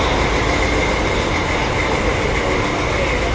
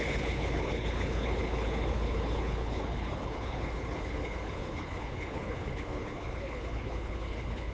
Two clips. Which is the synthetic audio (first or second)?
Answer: second